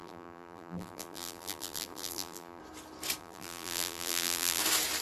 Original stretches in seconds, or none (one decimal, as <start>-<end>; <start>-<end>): 2.6-3.2; 4.6-5.0